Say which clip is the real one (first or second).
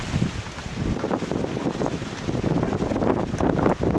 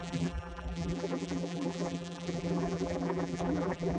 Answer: first